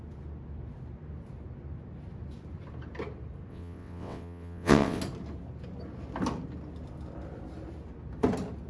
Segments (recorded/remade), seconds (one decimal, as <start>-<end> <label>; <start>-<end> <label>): 0.0-3.5 recorded; 3.5-5.0 remade; 5.0-8.7 recorded